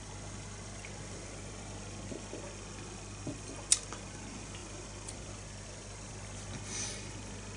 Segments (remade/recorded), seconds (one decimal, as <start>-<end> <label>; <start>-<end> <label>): 0.0-7.6 recorded